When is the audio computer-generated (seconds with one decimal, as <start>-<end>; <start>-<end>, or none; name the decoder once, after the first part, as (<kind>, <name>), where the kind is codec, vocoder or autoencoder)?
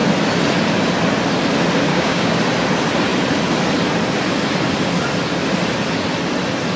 1.9-2.4 (codec, DAC)